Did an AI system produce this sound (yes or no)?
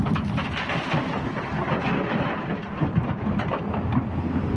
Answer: no